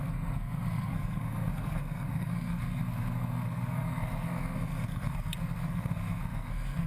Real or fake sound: fake